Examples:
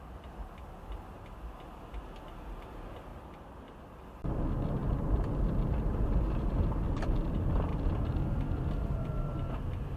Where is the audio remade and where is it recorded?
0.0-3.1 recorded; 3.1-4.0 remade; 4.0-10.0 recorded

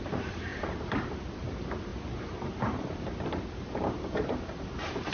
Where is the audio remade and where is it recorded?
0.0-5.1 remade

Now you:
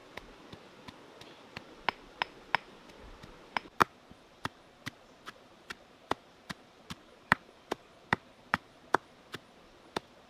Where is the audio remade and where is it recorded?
0.0-3.8 recorded; 3.8-8.9 remade; 8.9-10.3 recorded

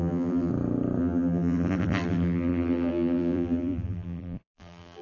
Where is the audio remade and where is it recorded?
0.0-0.5 remade; 0.5-1.0 recorded; 1.0-5.0 remade

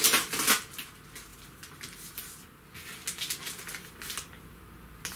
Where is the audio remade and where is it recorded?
0.0-1.3 recorded; 1.3-2.3 remade; 2.3-5.2 recorded

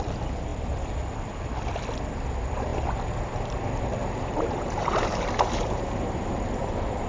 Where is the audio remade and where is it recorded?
0.0-3.9 recorded; 3.9-6.5 remade; 6.5-7.1 recorded

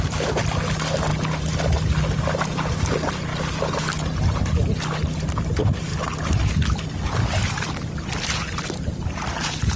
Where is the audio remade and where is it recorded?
0.0-5.9 recorded; 5.9-6.5 remade; 6.5-9.8 recorded

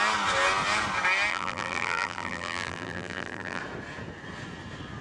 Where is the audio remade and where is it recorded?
0.0-1.3 recorded; 1.3-3.6 remade; 3.6-5.0 recorded